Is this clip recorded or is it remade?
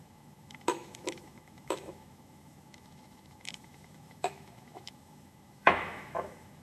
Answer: remade